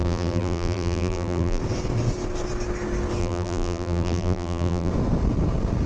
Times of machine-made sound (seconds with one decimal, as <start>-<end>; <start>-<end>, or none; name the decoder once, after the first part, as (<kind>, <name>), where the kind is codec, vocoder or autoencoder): 0.0-1.6 (vocoder, BigVGAN v2); 3.2-4.9